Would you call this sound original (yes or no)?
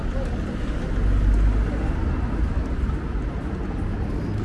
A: yes